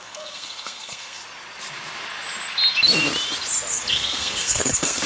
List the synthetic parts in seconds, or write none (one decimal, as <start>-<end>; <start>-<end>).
0.0-1.2; 3.9-5.1